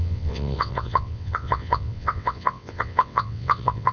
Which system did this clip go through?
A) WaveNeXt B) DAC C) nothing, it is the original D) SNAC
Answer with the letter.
A